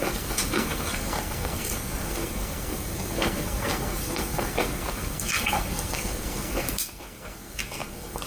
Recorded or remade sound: remade